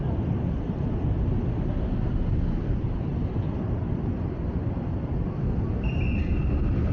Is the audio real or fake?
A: real